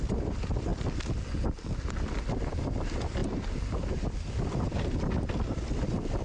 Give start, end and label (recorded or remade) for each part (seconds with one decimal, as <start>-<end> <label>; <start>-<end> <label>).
0.0-0.7 remade; 0.7-2.6 recorded; 2.6-3.2 remade; 3.2-4.2 recorded; 4.2-6.2 remade